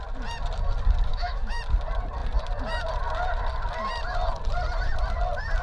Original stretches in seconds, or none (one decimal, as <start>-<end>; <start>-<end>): 0.0-1.1; 1.6-5.6

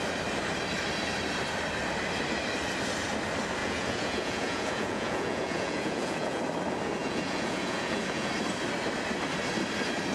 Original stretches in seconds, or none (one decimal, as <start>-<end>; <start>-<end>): 0.0-3.6; 6.4-7.0; 8.3-10.1